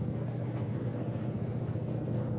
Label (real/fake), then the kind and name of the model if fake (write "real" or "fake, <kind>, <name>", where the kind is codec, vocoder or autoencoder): fake, codec, SNAC